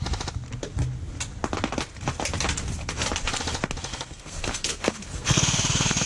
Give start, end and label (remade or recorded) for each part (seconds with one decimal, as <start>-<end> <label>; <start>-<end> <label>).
0.0-3.9 recorded; 3.9-6.1 remade